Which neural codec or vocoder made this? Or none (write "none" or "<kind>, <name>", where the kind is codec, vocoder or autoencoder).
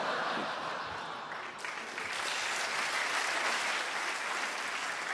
none